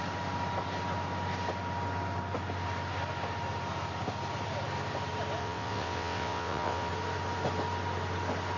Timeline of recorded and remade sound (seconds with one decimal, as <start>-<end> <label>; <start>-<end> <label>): 0.0-5.4 recorded; 5.4-6.9 remade; 6.9-8.6 recorded